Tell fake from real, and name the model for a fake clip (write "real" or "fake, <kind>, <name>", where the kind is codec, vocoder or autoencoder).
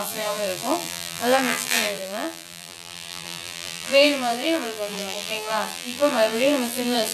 fake, vocoder, BigVGAN v2